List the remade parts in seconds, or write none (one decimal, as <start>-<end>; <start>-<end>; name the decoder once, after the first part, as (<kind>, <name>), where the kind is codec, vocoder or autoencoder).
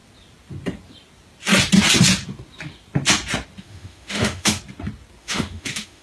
3.6-4.6 (autoencoder, DAC-VAE); 5.2-6.0